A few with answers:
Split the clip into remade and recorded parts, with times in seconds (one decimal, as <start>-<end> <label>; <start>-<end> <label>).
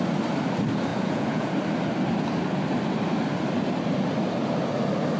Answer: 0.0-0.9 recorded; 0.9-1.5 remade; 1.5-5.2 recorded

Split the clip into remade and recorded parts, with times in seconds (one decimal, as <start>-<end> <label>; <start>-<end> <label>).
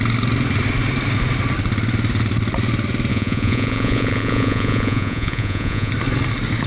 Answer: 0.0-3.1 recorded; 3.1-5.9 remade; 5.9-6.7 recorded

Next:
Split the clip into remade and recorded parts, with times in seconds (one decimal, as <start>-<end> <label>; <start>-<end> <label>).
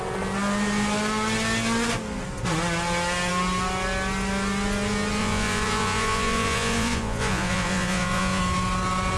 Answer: 0.0-5.2 recorded; 5.2-8.4 remade; 8.4-9.2 recorded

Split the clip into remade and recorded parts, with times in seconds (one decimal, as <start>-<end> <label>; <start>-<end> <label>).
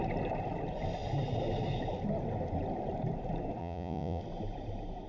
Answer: 0.0-3.6 recorded; 3.6-4.2 remade; 4.2-5.1 recorded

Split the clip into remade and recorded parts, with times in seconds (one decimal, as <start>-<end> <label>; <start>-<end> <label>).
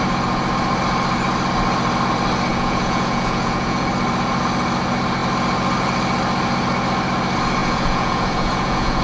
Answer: 0.0-2.5 recorded; 2.5-3.9 remade; 3.9-7.6 recorded; 7.6-9.0 remade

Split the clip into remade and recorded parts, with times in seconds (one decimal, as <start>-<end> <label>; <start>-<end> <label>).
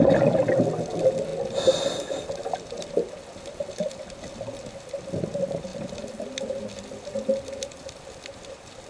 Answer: 0.0-8.9 recorded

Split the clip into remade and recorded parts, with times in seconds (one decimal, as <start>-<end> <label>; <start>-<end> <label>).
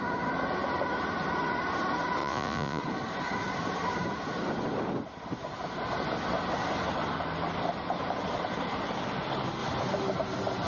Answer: 0.0-2.2 recorded; 2.2-2.8 remade; 2.8-10.7 recorded